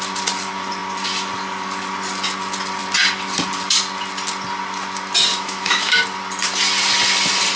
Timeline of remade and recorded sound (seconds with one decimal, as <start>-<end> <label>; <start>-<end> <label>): 0.0-5.3 recorded; 5.3-5.9 remade; 5.9-7.6 recorded